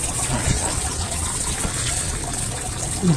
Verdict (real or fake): fake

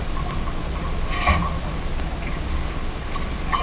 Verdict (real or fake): real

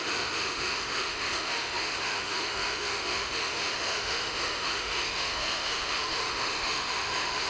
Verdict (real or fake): fake